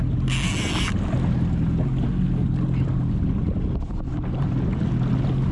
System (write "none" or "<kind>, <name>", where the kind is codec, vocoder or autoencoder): none